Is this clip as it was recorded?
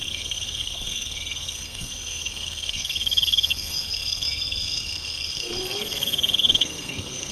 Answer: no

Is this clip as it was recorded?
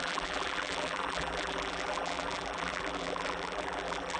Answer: no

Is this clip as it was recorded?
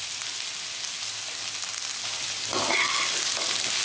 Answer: yes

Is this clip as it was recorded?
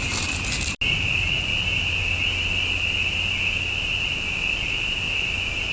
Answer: yes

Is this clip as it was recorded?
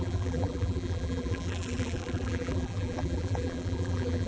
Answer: no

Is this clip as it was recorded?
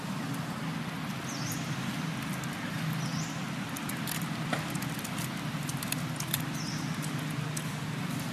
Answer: yes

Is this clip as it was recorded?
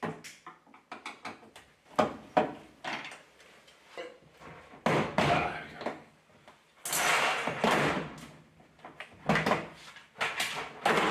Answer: yes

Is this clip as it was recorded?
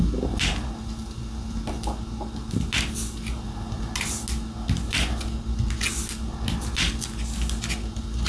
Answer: yes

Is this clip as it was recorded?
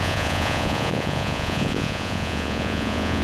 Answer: no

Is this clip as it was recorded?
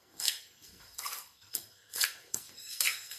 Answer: no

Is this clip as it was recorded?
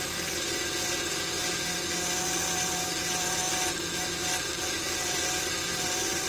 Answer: yes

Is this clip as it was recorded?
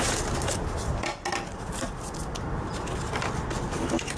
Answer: yes